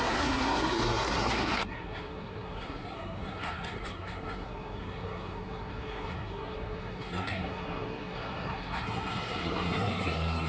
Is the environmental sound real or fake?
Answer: fake